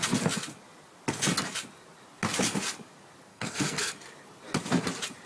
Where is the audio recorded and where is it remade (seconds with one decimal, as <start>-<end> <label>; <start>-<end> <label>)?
0.0-3.3 recorded; 3.3-3.9 remade; 3.9-5.3 recorded